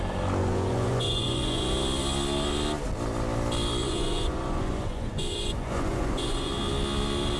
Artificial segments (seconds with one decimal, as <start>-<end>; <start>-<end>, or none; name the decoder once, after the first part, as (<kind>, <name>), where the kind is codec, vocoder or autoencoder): 0.4-1.6 (vocoder, Vocos); 3.8-6.5